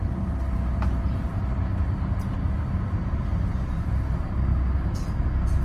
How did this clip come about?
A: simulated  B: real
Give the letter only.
B